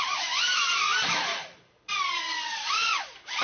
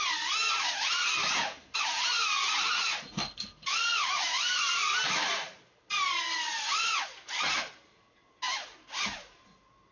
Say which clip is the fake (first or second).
first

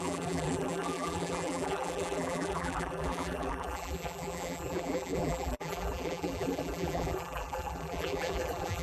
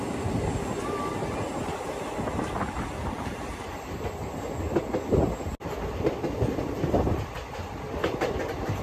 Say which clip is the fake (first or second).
first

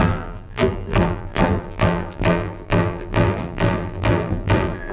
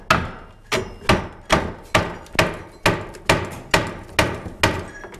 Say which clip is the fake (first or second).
first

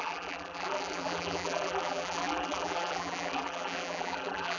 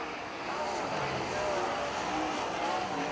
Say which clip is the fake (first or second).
first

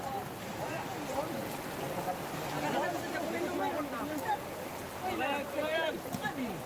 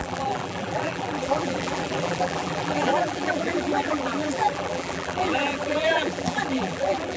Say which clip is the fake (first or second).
second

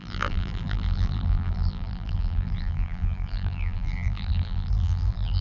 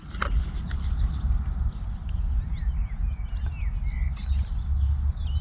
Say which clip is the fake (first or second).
first